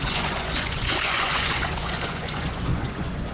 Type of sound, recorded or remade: remade